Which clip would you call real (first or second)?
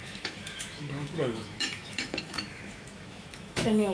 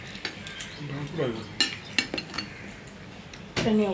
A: second